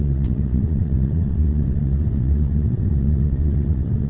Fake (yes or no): yes